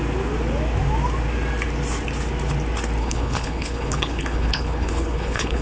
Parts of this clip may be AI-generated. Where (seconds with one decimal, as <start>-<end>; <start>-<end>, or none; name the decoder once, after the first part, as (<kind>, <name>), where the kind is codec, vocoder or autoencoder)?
3.0-5.6 (codec, HILCodec)

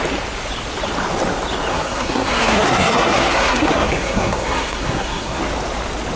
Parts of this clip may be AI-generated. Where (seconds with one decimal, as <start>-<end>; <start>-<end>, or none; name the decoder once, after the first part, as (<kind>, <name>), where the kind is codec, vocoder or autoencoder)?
1.7-5.4 (codec, SNAC)

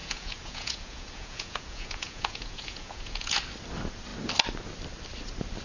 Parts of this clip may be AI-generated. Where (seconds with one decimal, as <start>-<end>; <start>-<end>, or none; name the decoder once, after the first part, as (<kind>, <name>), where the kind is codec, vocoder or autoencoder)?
0.0-3.4 (vocoder, Vocos)

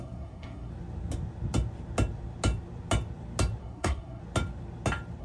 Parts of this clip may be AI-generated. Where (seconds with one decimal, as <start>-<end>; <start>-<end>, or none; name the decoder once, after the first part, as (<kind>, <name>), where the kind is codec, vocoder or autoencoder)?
0.0-0.7 (codec, SNAC); 3.6-4.2

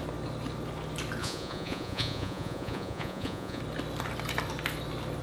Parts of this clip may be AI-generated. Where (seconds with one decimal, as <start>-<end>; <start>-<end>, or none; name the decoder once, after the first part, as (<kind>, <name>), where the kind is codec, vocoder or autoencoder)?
1.2-3.6 (vocoder, Vocos)

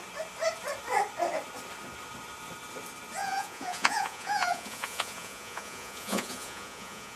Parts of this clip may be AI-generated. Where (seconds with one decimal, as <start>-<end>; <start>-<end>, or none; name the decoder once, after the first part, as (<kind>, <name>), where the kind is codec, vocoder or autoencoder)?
3.2-7.2 (vocoder, Vocos)

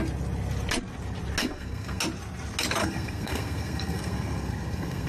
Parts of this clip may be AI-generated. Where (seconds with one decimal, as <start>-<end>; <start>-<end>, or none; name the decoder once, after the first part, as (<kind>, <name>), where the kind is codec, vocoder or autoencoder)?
1.4-2.0 (codec, SNAC); 2.8-5.1